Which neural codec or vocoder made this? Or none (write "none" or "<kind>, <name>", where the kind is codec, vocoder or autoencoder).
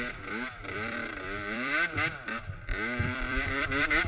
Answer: vocoder, BigVGAN v2